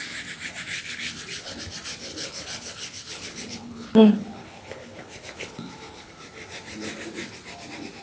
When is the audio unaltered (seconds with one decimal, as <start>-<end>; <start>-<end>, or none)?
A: 0.0-0.7; 1.6-2.1; 6.1-8.0